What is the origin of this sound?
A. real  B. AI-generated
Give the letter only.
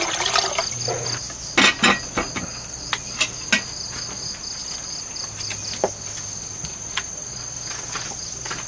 A